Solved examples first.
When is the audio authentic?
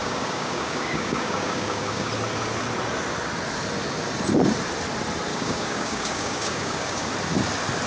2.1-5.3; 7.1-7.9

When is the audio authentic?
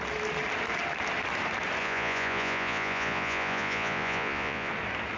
0.0-1.8; 4.7-5.2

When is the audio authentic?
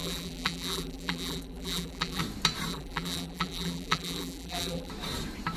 2.2-2.7; 4.9-5.6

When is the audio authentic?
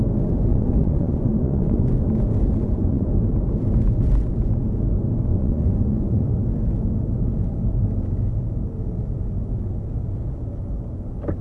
0.0-0.5; 1.9-2.6; 3.1-5.3; 6.3-11.4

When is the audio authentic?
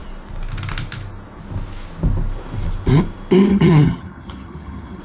0.0-3.5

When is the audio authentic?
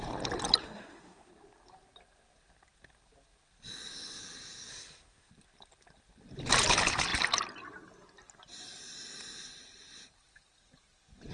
0.0-0.6; 1.3-4.7; 5.3-11.3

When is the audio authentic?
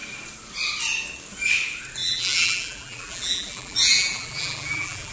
0.0-2.0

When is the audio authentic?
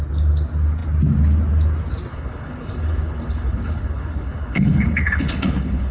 0.0-2.1